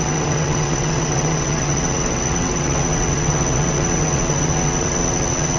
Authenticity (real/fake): fake